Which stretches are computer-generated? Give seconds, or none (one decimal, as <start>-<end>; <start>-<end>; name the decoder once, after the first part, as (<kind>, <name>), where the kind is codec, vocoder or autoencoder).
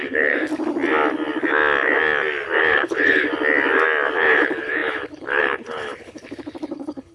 0.0-0.5 (codec, HILCodec); 2.7-3.3; 4.2-7.1